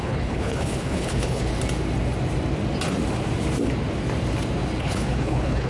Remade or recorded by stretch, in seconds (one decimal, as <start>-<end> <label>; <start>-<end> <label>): 0.0-1.5 remade; 1.5-4.8 recorded; 4.8-5.7 remade